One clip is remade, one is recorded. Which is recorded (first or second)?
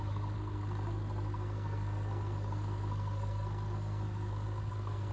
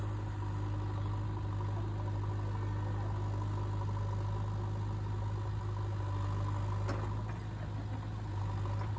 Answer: second